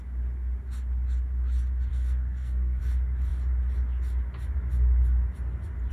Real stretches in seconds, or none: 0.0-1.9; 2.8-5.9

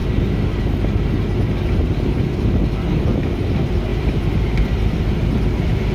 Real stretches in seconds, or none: 0.0-3.5

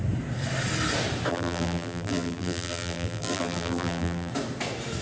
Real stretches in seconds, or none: 0.0-1.3; 4.3-5.0

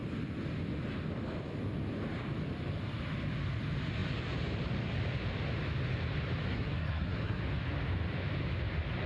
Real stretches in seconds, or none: 0.0-6.5; 7.4-9.1